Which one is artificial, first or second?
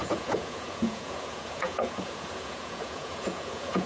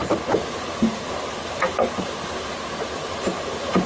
first